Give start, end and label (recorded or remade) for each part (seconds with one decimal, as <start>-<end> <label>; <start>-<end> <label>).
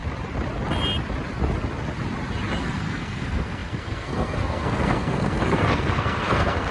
0.0-2.6 recorded; 2.6-6.7 remade